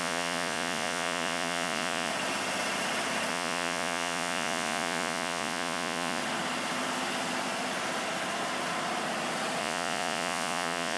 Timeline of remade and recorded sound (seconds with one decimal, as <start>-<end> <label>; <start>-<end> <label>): 0.0-2.1 remade; 2.1-3.3 recorded; 3.3-6.2 remade; 6.2-9.6 recorded; 9.6-11.0 remade